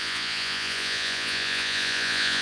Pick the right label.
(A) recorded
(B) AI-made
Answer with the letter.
B